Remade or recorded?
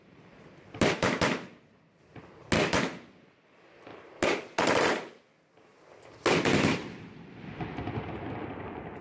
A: recorded